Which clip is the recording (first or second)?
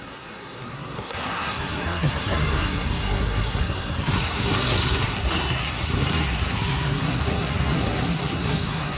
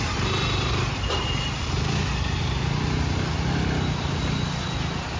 second